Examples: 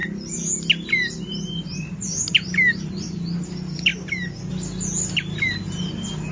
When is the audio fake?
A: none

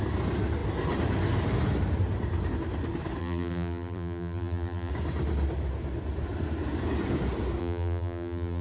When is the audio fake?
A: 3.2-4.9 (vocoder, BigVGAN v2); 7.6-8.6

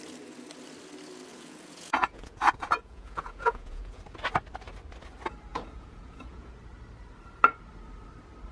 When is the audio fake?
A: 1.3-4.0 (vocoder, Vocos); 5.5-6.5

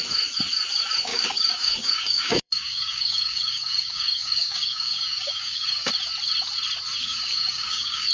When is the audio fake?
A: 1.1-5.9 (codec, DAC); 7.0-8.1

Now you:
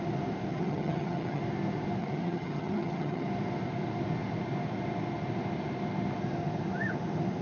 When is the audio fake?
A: 0.5-1.4 (vocoder, HiFi-GAN); 2.0-3.3

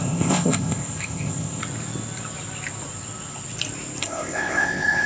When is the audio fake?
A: 0.0-1.6 (codec, ZipCodec); 4.0-5.1

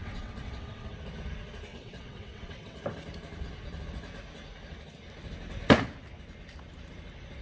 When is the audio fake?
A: 0.0-0.9 (vocoder, WaveNeXt); 1.7-2.8

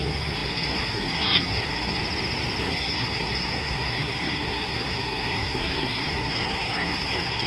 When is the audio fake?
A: 0.0-2.0 (codec, SNAC); 2.6-7.5